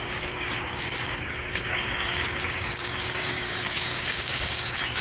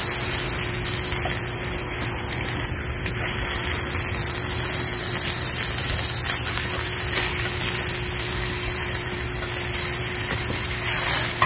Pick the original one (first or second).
second